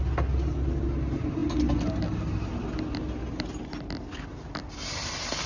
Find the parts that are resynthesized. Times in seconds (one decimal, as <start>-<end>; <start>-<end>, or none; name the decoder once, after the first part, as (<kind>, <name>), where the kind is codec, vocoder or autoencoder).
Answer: none